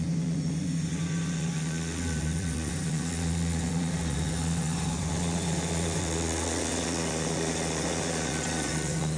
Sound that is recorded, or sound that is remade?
remade